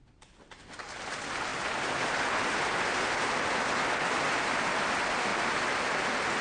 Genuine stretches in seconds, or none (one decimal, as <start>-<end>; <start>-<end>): 0.0-6.4